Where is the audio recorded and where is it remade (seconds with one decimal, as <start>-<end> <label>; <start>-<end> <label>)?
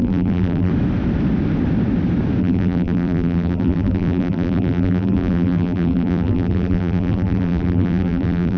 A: 0.0-0.7 remade; 0.7-2.4 recorded; 2.4-8.6 remade